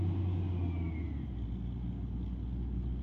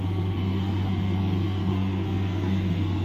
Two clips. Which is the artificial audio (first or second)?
second